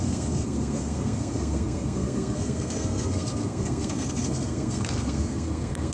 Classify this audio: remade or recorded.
remade